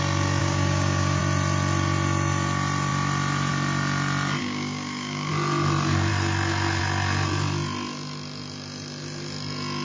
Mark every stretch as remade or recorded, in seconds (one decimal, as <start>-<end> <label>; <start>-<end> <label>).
0.0-0.4 recorded; 0.4-1.2 remade; 1.2-4.4 recorded; 4.4-5.3 remade; 5.3-9.8 recorded